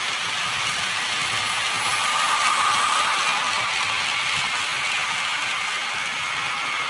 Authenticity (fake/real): real